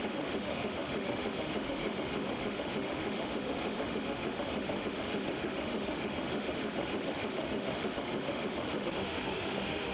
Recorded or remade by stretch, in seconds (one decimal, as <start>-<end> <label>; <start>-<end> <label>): 0.0-9.9 remade